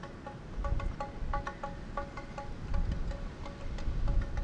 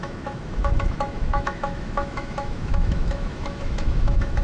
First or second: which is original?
first